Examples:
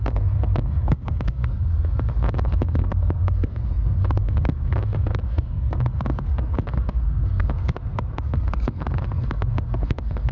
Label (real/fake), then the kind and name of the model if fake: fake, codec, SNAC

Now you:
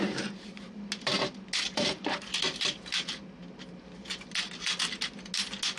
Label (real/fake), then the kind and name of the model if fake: real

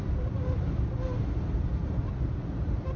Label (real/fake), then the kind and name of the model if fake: real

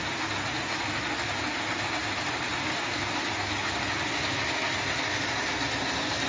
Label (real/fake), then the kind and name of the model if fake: real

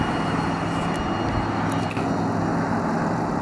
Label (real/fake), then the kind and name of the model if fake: real